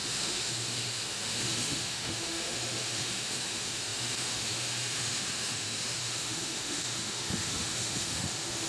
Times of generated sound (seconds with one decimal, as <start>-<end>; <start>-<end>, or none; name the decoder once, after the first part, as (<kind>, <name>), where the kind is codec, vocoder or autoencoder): 0.0-8.7 (autoencoder, DAC-VAE)